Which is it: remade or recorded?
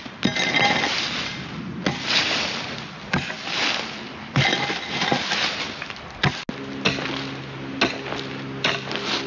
recorded